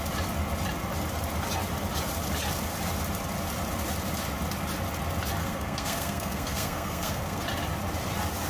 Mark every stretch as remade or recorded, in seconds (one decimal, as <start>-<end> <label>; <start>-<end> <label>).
0.0-5.4 recorded; 5.4-7.4 remade; 7.4-8.5 recorded

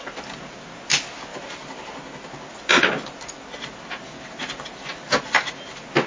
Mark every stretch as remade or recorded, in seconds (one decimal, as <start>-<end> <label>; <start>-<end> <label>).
0.0-6.1 recorded

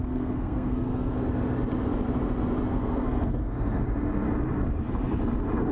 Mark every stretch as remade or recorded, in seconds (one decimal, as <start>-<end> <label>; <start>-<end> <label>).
0.0-1.1 remade; 1.1-2.7 recorded; 2.7-3.8 remade; 3.8-5.7 recorded

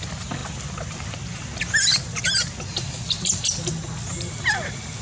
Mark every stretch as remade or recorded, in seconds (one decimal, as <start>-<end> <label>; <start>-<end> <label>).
0.0-5.0 recorded

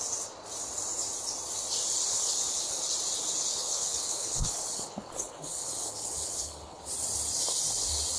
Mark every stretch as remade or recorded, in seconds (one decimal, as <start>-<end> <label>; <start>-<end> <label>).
0.0-2.1 recorded; 2.1-2.8 remade; 2.8-3.5 recorded; 3.5-6.8 remade; 6.8-8.2 recorded